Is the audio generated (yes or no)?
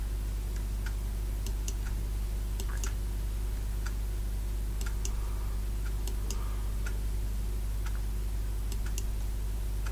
no